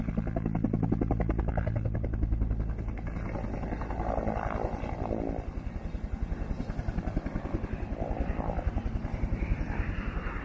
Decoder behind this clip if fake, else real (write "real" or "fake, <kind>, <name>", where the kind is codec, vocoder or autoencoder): real